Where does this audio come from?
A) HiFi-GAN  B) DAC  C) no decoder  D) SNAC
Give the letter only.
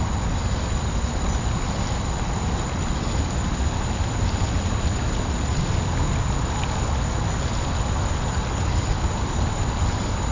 C